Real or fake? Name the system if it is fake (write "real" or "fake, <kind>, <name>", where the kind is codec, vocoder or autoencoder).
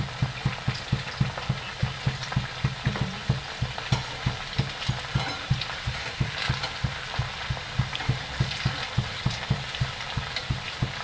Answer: fake, vocoder, BigVGAN v2